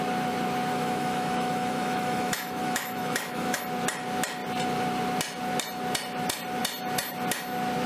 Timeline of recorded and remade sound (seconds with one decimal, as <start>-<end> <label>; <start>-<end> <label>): 0.0-0.7 recorded; 0.7-3.6 remade; 3.6-7.9 recorded